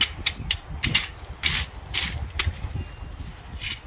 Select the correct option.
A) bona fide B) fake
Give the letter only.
A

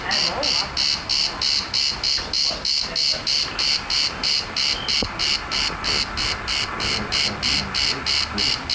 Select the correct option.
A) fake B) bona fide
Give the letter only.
B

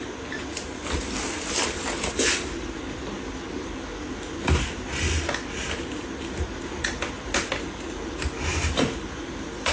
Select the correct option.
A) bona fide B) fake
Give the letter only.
A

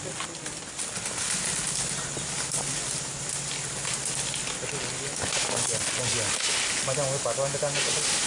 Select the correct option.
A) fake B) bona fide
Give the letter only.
B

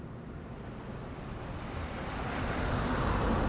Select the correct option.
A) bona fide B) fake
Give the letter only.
A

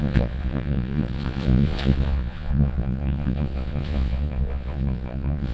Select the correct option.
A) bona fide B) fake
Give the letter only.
B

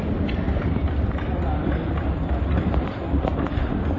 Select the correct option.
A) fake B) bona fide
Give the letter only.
B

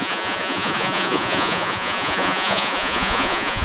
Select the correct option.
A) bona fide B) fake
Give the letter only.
B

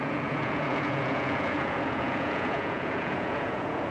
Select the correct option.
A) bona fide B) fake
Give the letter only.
B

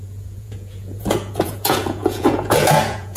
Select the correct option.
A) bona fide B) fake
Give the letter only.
B